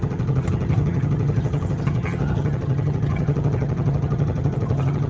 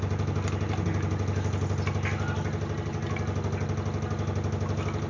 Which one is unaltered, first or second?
second